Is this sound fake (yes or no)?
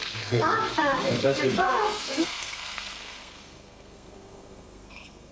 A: yes